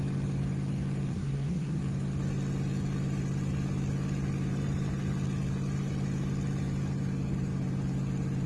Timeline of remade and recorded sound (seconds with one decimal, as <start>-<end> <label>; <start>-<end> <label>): 0.0-1.1 recorded; 1.1-1.8 remade; 1.8-8.5 recorded

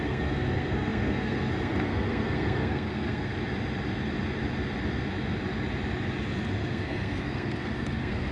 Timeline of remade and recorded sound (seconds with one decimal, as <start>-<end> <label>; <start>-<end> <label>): 0.0-3.3 remade; 3.3-6.5 recorded; 6.5-8.3 remade